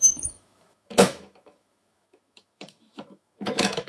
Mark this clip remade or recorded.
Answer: remade